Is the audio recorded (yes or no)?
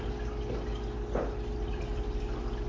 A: yes